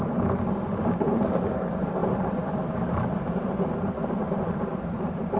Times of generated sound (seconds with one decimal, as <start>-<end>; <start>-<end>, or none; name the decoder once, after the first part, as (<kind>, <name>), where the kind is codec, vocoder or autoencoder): 2.0-5.4 (vocoder, BigVGAN v2)